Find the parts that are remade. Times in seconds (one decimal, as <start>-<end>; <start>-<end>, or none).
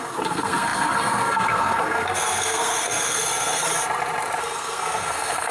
0.0-3.7; 4.4-5.5